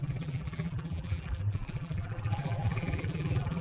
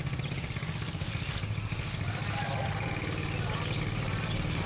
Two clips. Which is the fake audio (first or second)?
first